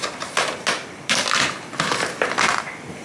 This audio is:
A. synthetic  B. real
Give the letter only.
B